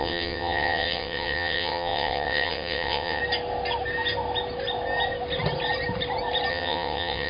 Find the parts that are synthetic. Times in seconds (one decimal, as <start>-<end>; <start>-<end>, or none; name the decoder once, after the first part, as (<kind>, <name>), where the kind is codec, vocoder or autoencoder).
0.0-3.2 (vocoder, WaveNeXt); 6.5-7.3